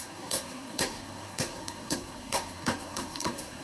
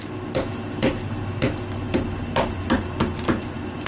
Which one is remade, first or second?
first